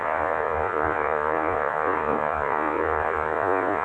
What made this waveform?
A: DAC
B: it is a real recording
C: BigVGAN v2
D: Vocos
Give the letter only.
D